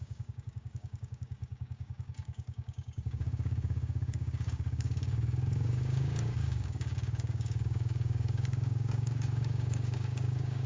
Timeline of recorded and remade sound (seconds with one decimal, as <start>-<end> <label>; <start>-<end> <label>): 0.0-10.7 remade